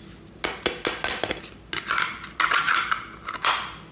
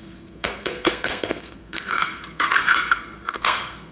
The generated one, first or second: second